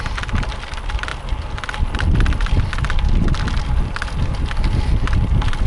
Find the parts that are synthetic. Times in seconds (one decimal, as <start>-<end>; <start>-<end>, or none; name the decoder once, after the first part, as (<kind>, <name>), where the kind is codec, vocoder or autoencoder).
none